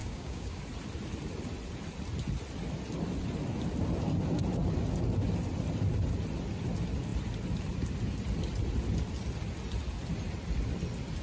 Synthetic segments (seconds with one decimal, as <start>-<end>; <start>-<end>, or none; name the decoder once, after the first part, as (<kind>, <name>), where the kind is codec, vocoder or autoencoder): 0.0-0.6 (codec, DAC)